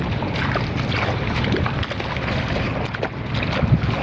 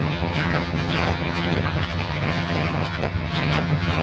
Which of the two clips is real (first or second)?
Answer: first